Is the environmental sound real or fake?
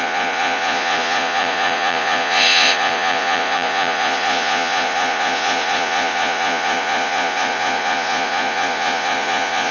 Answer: fake